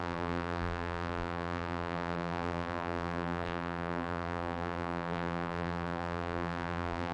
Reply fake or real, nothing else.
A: fake